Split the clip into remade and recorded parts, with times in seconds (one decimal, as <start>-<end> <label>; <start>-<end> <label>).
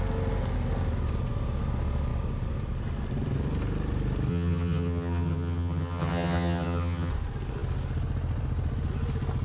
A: 0.0-4.3 recorded; 4.3-7.1 remade; 7.1-9.4 recorded